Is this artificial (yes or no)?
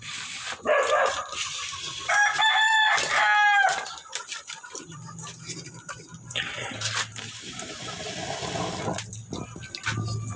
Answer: no